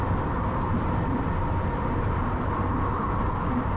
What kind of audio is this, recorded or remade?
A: remade